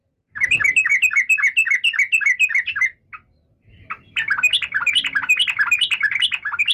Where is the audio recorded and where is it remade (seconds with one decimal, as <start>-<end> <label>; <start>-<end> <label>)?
0.0-0.9 remade; 0.9-4.1 recorded; 4.1-6.7 remade

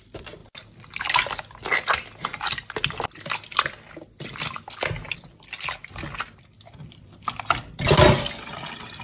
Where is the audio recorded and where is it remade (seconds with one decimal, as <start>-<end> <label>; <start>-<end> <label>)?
0.0-6.8 recorded; 6.8-7.9 remade; 7.9-9.0 recorded